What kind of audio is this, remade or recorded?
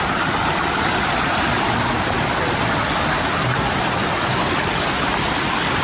recorded